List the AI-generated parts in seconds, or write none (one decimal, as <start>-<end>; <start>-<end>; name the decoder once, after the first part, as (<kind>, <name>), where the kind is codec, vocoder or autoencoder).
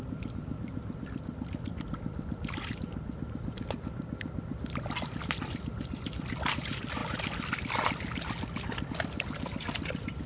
0.0-7.0 (vocoder, BigVGAN v2); 8.9-10.3